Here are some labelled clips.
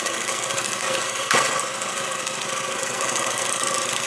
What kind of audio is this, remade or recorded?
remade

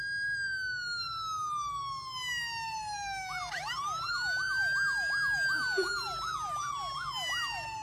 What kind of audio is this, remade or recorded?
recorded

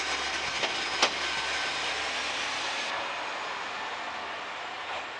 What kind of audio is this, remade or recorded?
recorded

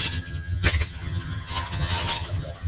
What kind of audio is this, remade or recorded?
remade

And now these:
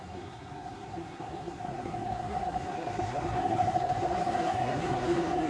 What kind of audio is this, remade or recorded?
remade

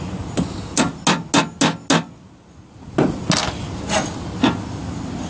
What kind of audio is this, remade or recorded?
recorded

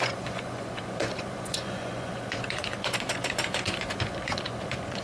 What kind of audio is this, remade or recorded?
remade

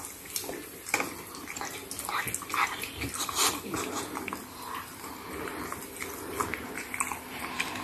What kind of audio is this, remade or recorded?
recorded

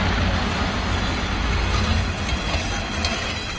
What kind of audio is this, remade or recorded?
recorded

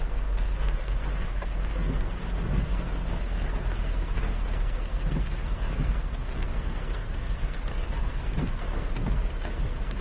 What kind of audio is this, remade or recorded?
remade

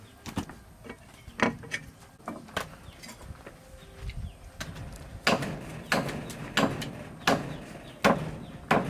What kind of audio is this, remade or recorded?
recorded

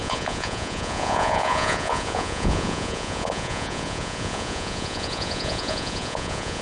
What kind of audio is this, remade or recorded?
remade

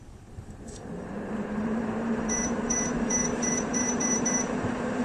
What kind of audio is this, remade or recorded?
remade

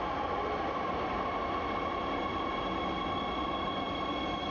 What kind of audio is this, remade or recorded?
recorded